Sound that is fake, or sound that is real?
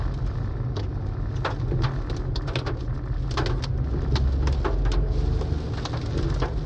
real